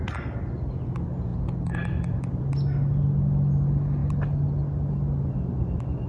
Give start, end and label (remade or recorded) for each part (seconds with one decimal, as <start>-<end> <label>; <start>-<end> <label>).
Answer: 0.0-6.1 recorded